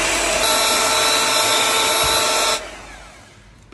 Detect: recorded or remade recorded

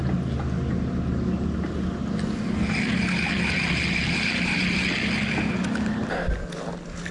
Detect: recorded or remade recorded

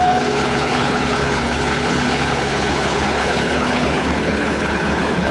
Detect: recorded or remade remade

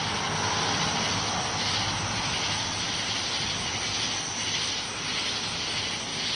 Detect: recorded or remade recorded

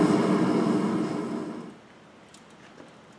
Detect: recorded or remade recorded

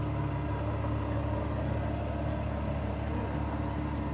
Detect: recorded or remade recorded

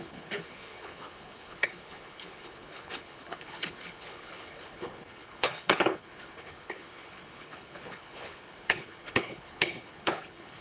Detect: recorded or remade remade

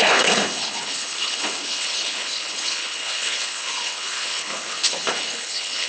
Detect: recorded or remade remade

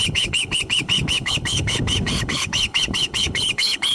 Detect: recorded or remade remade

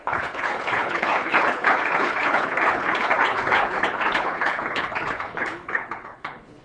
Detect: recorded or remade remade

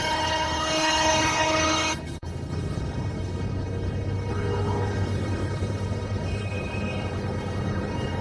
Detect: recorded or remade remade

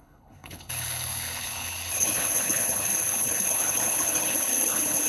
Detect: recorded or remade remade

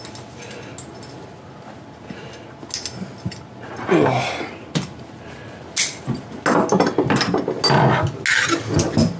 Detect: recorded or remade recorded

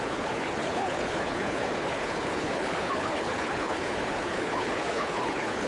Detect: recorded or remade remade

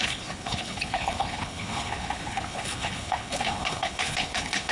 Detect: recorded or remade remade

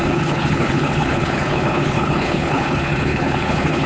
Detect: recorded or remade remade